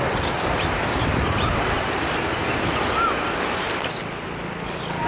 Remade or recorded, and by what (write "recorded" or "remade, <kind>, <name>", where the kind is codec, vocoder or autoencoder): recorded